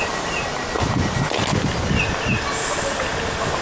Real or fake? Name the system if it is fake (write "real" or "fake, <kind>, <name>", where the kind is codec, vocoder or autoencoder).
real